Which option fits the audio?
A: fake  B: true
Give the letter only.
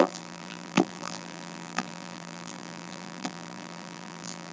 A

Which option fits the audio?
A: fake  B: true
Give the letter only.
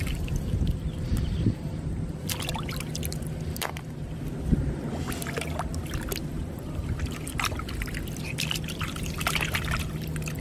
B